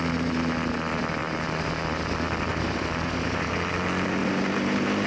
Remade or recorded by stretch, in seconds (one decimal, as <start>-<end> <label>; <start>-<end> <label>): 0.0-1.2 recorded; 1.2-1.7 remade; 1.7-2.5 recorded; 2.5-3.5 remade; 3.5-4.2 recorded; 4.2-5.1 remade